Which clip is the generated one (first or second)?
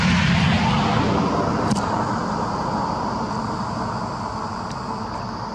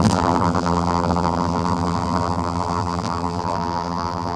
second